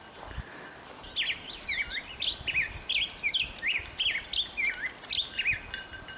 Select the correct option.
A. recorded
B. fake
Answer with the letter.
A